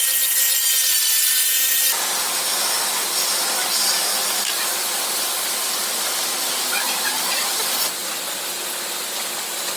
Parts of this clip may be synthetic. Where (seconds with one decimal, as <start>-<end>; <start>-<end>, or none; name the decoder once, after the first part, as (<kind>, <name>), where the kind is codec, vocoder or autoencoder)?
4.1-5.7 (vocoder, BigVGAN v2)

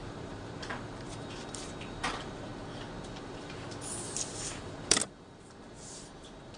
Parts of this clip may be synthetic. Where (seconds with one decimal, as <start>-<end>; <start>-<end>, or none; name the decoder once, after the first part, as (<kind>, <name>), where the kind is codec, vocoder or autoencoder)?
0.0-2.5 (vocoder, BigVGAN v2); 3.2-3.6; 4.3-6.6